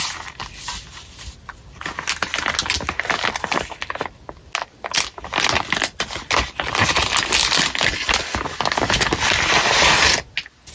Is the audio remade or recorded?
recorded